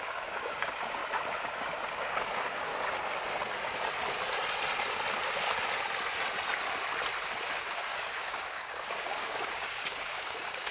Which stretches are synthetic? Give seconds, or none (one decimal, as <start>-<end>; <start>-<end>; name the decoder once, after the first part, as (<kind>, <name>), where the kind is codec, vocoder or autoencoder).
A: 0.0-1.0 (codec, DAC); 1.9-2.7; 7.5-10.7